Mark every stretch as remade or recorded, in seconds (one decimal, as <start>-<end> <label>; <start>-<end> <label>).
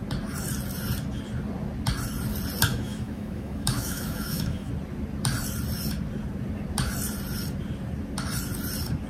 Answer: 0.0-2.7 recorded; 2.7-4.7 remade; 4.7-9.1 recorded